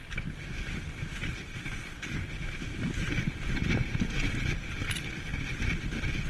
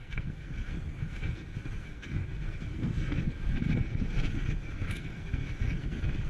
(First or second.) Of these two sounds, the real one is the first